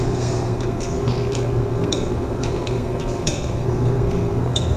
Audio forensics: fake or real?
fake